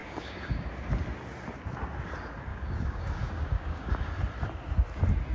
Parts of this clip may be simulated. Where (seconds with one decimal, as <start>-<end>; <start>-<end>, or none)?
0.0-0.7; 2.5-4.1